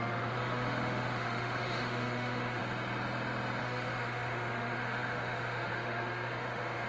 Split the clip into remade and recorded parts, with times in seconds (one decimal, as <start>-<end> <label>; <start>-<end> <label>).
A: 0.0-2.6 remade; 2.6-3.6 recorded; 3.6-6.9 remade